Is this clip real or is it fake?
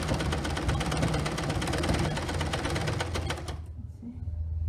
real